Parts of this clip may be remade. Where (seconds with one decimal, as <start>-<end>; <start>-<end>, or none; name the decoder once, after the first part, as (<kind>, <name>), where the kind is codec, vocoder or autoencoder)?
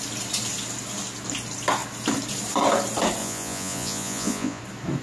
3.2-4.6 (vocoder, Vocos)